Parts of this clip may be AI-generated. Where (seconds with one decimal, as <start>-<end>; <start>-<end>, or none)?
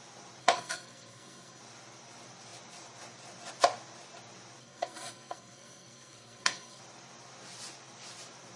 0.4-1.6; 4.6-6.8